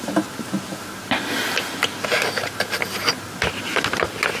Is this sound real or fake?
real